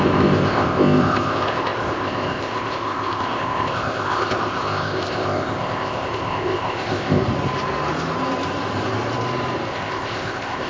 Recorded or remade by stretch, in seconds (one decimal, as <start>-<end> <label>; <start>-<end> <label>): 0.0-7.2 remade; 7.2-9.7 recorded; 9.7-10.7 remade